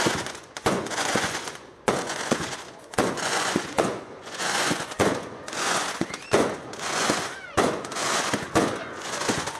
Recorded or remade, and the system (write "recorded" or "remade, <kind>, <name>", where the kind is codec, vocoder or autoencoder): remade, vocoder, Vocos